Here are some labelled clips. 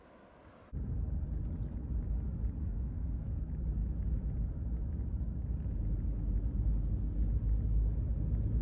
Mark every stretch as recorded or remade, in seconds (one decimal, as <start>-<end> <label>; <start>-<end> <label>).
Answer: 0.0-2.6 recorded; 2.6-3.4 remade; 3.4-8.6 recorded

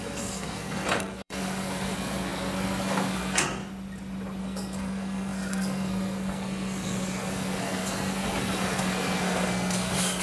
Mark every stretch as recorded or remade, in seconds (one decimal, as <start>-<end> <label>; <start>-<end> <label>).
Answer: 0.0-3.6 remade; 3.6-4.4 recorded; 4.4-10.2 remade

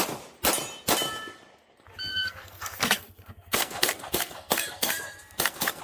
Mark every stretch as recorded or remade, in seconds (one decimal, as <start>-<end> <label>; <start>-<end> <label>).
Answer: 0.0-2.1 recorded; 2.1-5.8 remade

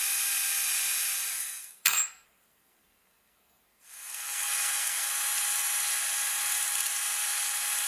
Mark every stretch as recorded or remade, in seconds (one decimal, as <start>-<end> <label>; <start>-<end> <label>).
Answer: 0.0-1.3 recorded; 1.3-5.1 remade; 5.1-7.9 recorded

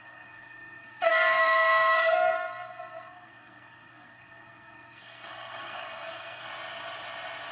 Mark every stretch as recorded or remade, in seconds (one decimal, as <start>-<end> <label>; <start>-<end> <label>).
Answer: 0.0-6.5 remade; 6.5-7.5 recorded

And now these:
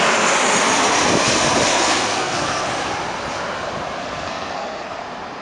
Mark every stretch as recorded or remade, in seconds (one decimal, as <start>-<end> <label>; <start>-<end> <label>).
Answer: 0.0-1.7 recorded; 1.7-2.7 remade; 2.7-4.0 recorded; 4.0-5.0 remade; 5.0-5.4 recorded

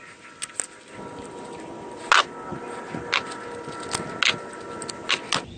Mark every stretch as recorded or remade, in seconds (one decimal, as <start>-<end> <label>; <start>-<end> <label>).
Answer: 0.0-5.6 recorded